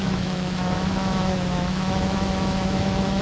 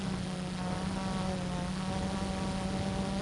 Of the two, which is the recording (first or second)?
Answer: second